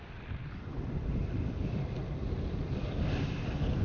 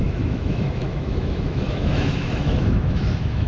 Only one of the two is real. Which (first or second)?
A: first